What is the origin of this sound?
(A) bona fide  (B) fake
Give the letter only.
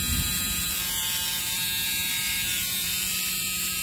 B